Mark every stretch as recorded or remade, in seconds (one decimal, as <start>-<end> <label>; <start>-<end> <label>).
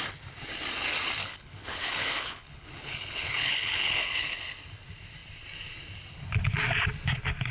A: 0.0-1.2 recorded; 1.2-4.5 remade; 4.5-7.5 recorded